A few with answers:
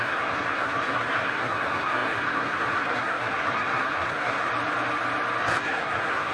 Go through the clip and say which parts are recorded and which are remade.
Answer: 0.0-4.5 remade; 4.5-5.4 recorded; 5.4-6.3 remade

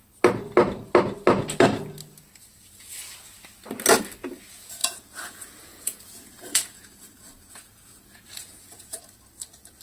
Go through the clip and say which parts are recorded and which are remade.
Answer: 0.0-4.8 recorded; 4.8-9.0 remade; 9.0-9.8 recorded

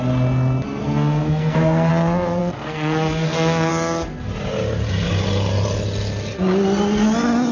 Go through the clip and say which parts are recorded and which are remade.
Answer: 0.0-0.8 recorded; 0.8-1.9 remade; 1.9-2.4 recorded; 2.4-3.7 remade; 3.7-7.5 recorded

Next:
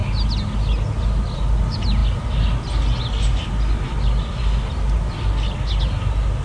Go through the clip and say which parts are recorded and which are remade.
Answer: 0.0-6.4 recorded

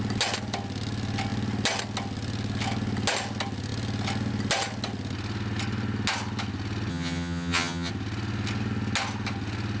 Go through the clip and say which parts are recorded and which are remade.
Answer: 0.0-6.9 recorded; 6.9-7.9 remade; 7.9-9.8 recorded